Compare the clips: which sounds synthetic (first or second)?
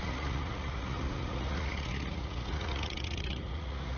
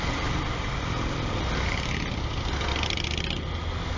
first